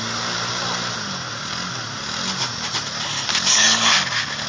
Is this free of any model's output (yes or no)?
yes